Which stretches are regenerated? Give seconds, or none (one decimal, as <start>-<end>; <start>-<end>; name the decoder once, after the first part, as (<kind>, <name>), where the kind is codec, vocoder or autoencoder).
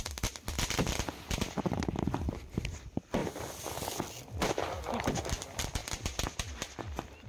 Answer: none